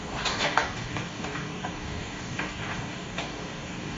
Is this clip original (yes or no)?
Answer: no